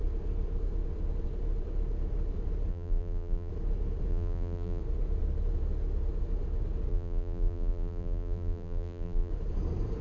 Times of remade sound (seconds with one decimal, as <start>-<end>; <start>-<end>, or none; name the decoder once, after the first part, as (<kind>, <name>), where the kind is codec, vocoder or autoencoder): 2.7-3.5 (vocoder, BigVGAN v2); 4.1-4.8; 6.9-9.3